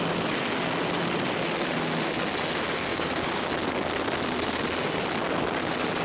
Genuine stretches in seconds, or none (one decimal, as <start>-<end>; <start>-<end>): 0.0-2.9; 3.5-6.0